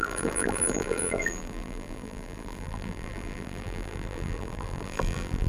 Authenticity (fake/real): fake